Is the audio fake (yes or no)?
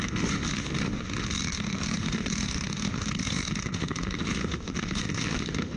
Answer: yes